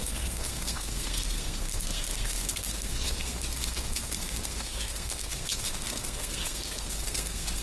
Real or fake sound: fake